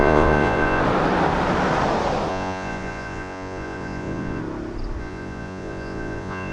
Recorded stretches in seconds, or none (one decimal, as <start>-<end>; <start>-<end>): 0.8-2.3; 4.4-5.0